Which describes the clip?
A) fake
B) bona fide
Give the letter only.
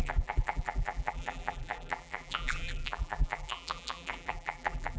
A